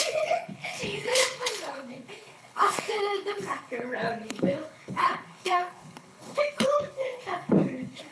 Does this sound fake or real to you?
fake